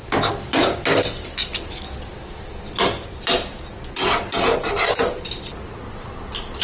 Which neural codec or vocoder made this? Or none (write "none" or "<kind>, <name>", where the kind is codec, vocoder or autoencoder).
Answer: none